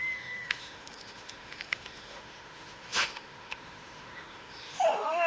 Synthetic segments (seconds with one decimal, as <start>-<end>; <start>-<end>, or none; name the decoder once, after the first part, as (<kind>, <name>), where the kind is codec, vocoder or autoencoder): 0.0-5.3 (autoencoder, DAC-VAE)